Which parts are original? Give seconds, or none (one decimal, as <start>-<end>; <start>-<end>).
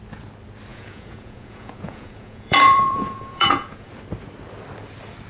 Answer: 0.0-0.7; 3.9-5.3